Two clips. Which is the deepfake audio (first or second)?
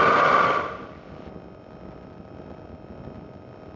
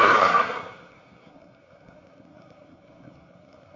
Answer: second